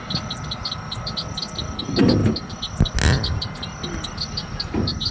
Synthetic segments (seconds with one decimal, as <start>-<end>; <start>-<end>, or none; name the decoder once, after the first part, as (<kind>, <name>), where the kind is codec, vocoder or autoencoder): none